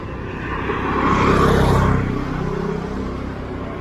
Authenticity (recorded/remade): recorded